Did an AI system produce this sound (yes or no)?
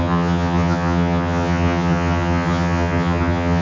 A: yes